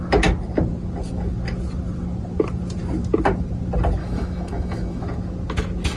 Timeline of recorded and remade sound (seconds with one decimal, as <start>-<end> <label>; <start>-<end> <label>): 0.0-4.0 recorded; 4.0-5.0 remade; 5.0-6.0 recorded